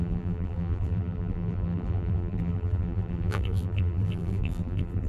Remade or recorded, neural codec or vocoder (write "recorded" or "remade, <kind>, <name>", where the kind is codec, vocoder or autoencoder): remade, vocoder, BigVGAN v2